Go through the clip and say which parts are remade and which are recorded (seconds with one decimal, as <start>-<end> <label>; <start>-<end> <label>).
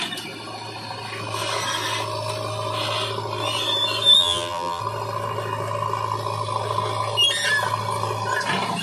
0.0-4.2 recorded; 4.2-4.8 remade; 4.8-8.8 recorded